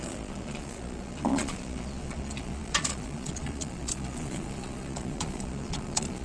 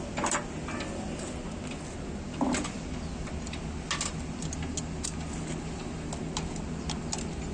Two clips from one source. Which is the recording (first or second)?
second